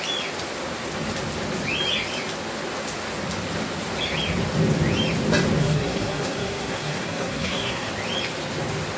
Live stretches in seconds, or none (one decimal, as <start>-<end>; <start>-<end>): 0.0-5.6; 7.9-9.0